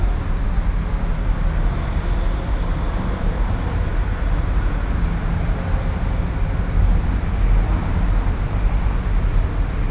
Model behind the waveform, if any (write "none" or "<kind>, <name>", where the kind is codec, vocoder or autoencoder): none